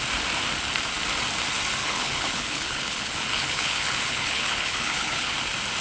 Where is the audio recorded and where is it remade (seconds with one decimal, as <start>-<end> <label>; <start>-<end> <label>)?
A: 0.0-1.8 recorded; 1.8-5.3 remade; 5.3-5.8 recorded

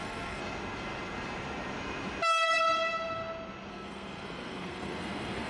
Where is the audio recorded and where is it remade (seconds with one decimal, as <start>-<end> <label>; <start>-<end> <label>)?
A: 0.0-0.4 remade; 0.4-3.7 recorded; 3.7-5.5 remade